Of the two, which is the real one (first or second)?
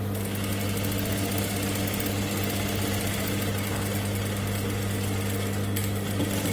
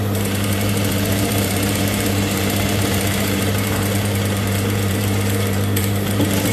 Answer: first